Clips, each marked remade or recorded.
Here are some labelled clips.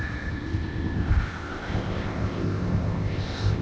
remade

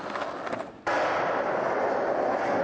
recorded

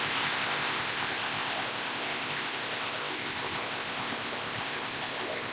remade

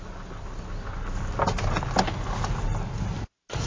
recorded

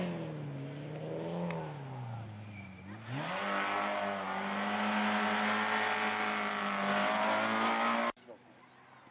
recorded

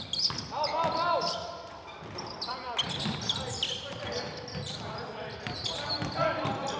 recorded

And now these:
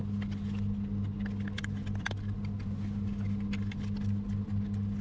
recorded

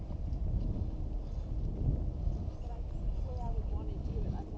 recorded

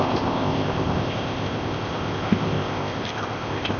remade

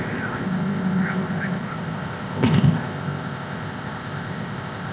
remade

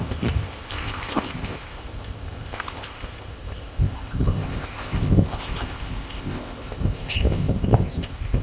remade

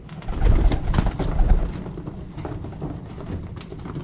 recorded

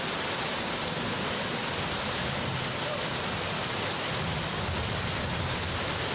recorded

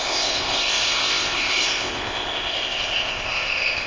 remade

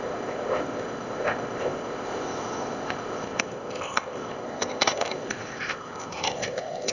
remade